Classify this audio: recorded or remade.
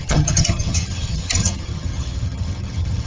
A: remade